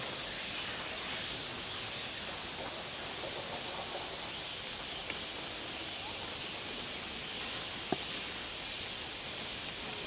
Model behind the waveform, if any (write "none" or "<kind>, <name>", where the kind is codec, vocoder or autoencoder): none